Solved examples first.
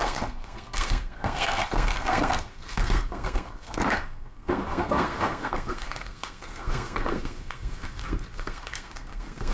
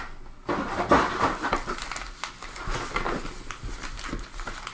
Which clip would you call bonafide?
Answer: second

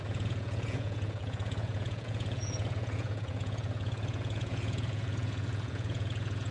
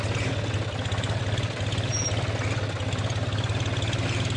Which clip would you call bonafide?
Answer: second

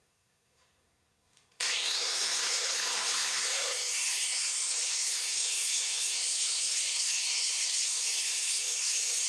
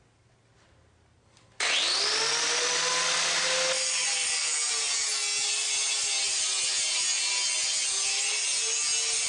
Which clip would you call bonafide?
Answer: second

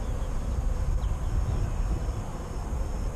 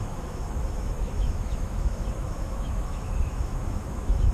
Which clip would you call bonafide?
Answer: first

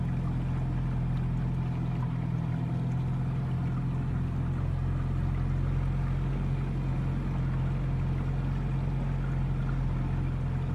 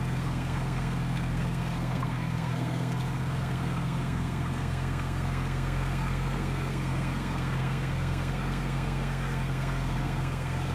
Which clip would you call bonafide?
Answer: first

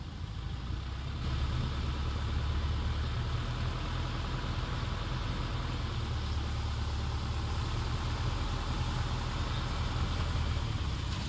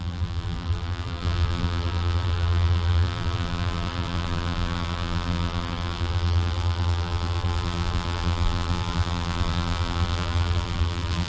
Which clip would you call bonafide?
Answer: first